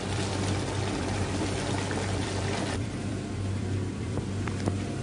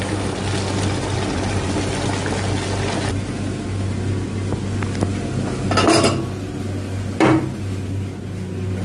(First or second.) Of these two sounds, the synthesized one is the first